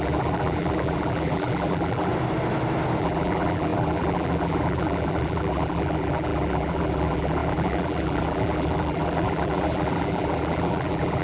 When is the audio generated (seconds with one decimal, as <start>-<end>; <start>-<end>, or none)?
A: 0.0-2.1; 3.0-11.2